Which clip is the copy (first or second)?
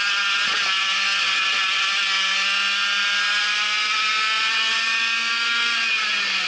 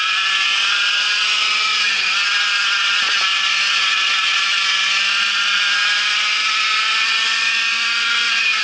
second